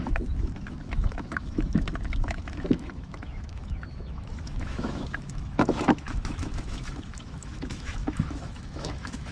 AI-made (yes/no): yes